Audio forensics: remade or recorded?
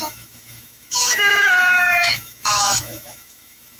remade